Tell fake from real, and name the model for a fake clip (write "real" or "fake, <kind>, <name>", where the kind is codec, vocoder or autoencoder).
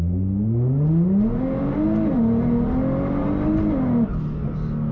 real